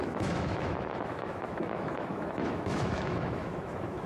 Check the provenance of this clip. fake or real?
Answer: fake